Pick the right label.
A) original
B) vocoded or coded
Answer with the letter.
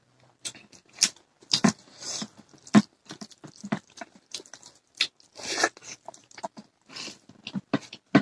A